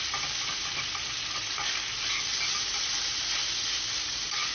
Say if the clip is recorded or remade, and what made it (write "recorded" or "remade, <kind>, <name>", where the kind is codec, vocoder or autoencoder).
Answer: recorded